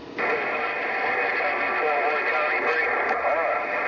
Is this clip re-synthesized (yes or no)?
no